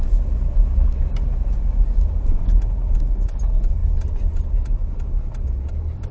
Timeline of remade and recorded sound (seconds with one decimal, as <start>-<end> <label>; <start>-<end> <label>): 0.0-6.1 recorded